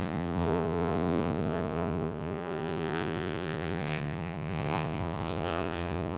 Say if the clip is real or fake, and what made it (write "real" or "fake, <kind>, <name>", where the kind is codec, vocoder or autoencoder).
fake, vocoder, Vocos